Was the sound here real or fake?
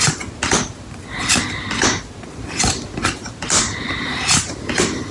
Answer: real